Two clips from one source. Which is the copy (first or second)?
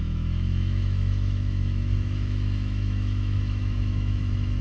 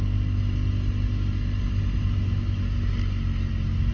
first